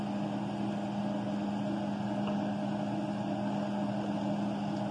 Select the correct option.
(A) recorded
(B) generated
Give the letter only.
A